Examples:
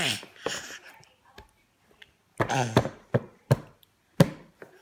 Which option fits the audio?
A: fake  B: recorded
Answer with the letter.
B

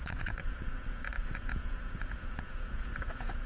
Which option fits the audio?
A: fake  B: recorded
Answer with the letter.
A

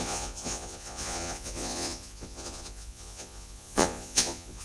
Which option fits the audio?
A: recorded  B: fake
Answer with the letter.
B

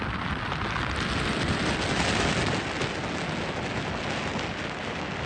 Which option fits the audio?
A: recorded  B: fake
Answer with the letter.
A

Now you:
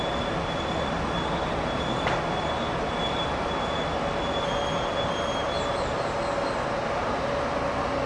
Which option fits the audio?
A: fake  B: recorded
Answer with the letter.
B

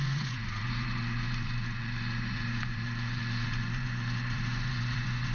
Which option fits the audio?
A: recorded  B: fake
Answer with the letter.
B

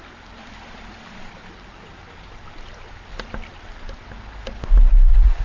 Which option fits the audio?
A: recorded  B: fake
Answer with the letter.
A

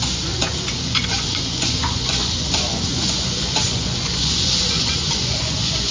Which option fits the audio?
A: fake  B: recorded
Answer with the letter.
A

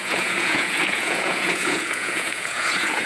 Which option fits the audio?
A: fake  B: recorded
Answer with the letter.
A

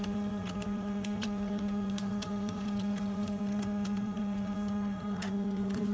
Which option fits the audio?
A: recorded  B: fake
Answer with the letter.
B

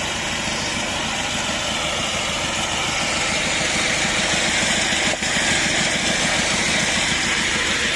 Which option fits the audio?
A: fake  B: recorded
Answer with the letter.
B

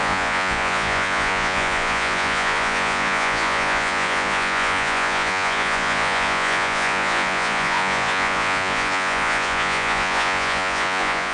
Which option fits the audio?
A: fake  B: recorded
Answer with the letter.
A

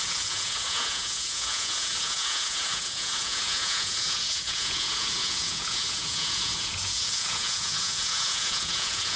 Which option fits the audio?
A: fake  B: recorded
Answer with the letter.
A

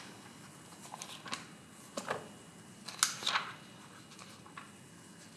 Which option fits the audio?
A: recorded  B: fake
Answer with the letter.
A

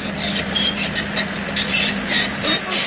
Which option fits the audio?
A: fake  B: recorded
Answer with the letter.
B